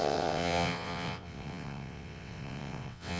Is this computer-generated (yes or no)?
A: yes